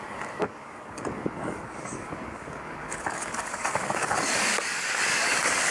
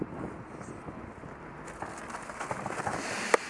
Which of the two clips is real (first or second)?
second